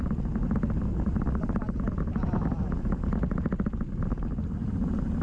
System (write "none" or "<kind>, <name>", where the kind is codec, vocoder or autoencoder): none